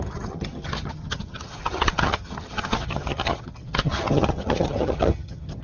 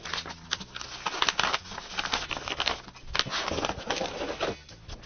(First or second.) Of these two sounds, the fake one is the first